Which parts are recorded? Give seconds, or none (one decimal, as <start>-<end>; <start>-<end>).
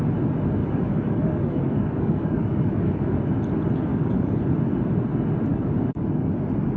0.0-0.6; 3.1-3.9; 4.4-5.5; 6.3-6.8